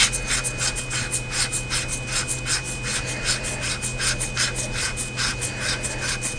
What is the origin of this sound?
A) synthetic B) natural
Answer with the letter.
B